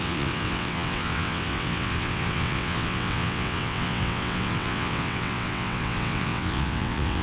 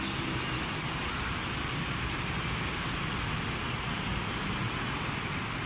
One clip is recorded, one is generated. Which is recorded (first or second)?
second